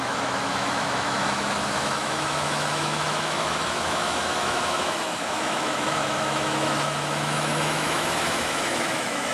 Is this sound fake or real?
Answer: fake